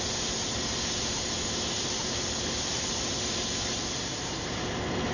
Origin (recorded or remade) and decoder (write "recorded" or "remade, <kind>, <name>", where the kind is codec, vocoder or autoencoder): recorded